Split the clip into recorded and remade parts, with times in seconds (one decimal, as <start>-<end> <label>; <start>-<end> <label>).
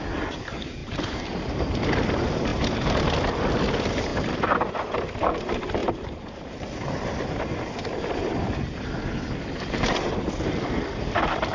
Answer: 0.0-0.8 recorded; 0.8-1.8 remade; 1.8-5.8 recorded; 5.8-6.7 remade; 6.7-11.5 recorded